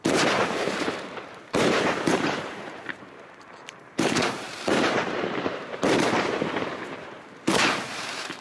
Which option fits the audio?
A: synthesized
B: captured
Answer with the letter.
A